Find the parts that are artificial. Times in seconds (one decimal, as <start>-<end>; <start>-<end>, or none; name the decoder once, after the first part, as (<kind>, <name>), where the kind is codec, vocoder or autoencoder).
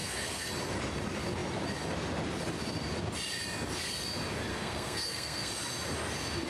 0.0-0.5 (codec, SNAC); 4.5-5.5